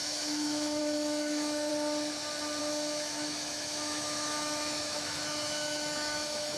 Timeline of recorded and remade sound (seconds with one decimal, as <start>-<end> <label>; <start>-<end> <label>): 0.0-1.7 remade; 1.7-2.6 recorded; 2.6-6.6 remade

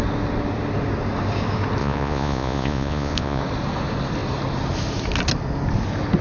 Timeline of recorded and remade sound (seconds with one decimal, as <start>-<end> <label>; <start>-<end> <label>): 0.0-1.8 recorded; 1.8-3.4 remade; 3.4-6.2 recorded

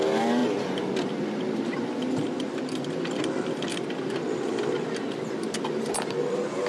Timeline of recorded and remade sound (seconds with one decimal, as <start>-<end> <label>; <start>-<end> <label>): 0.0-6.7 recorded

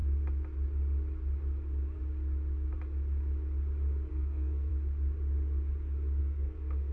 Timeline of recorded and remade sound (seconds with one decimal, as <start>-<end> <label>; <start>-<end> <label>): 0.0-4.1 recorded; 4.1-4.7 remade; 4.7-6.2 recorded; 6.2-6.9 remade

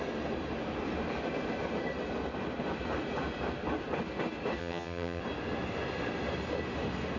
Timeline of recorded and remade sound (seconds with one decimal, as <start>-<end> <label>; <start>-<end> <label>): 0.0-4.6 recorded; 4.6-5.2 remade; 5.2-7.2 recorded